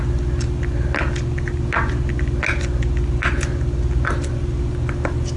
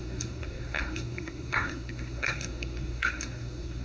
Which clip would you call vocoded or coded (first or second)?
second